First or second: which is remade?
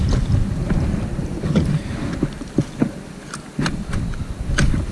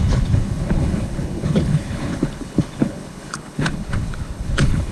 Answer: second